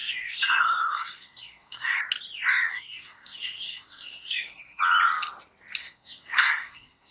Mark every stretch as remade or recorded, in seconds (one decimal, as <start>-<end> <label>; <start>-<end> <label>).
0.0-2.0 remade; 2.0-2.7 recorded; 2.7-4.8 remade; 4.8-5.8 recorded; 5.8-7.1 remade